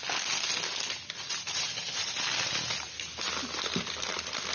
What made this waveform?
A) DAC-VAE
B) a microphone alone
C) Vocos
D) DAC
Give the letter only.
B